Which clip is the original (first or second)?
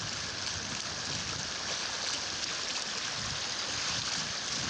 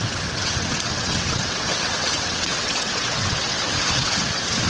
first